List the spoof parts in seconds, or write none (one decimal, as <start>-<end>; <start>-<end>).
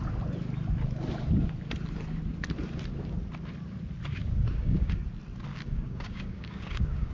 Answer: 4.2-5.0; 5.5-7.1